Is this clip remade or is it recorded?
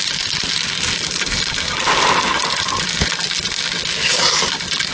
recorded